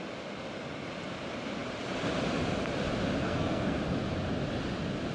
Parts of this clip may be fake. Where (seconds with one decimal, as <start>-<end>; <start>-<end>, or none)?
3.2-3.8